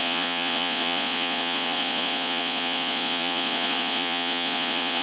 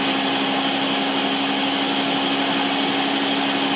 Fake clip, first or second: first